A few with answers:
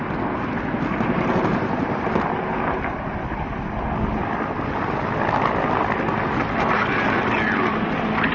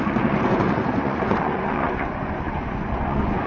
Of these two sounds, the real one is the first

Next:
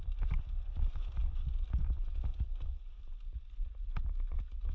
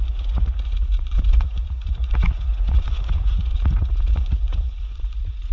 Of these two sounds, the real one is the first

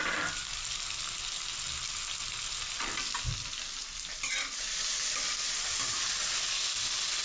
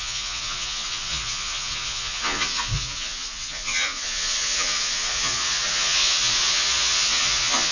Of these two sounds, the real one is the first